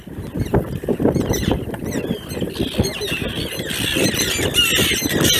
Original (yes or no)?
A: yes